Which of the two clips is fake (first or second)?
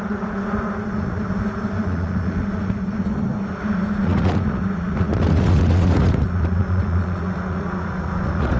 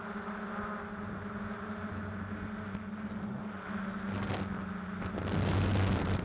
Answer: first